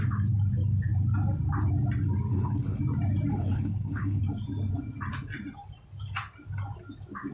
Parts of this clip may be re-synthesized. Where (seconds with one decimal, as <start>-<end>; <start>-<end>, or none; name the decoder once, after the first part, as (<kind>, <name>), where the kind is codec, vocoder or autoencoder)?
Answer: 2.3-2.8 (codec, HILCodec); 3.3-4.2